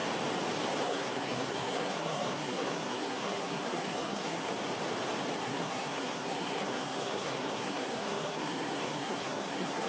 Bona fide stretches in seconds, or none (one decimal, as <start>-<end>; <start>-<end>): 0.0-0.8; 4.5-5.4